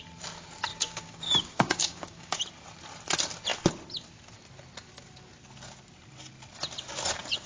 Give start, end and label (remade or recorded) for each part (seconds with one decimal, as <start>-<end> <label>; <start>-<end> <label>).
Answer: 0.0-0.7 recorded; 0.7-2.4 remade; 2.4-7.5 recorded